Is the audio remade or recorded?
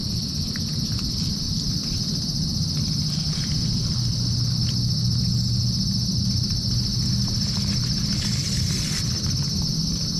recorded